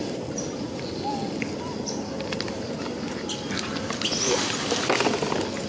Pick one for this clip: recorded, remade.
recorded